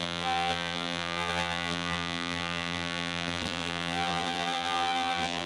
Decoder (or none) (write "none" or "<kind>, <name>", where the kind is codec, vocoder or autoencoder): vocoder, BigVGAN v2